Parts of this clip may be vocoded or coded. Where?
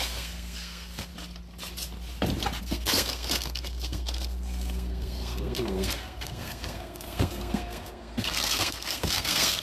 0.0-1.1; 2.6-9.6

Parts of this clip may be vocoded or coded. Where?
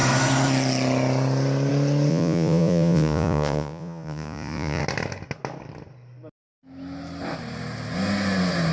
2.1-4.8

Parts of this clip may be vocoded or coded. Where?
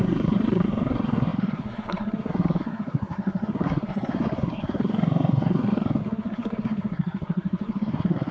0.0-8.3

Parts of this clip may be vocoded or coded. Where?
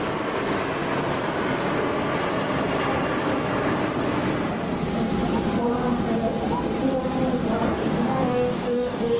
7.6-9.2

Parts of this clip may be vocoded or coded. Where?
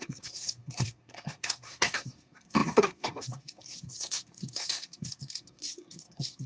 0.0-6.5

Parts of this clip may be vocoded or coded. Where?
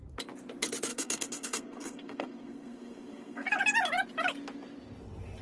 0.9-3.6